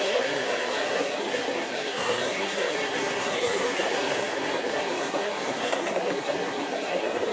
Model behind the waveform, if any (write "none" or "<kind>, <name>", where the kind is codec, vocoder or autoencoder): codec, SNAC